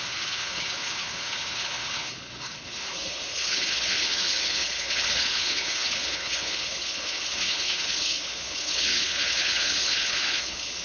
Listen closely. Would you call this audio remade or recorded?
remade